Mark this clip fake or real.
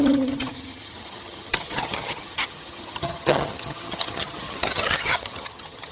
fake